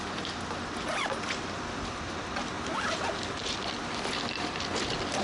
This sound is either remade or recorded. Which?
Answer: recorded